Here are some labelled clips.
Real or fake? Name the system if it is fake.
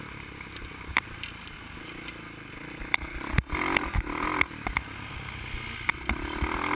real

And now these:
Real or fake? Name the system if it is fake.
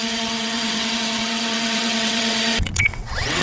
fake, vocoder, WaveNeXt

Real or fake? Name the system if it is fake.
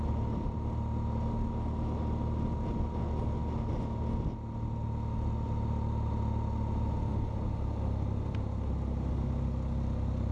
real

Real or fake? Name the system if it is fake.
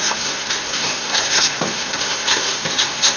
fake, codec, SNAC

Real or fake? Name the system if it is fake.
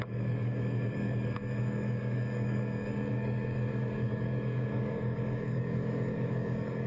fake, codec, DAC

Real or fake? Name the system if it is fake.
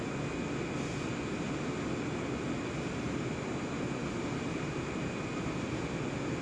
real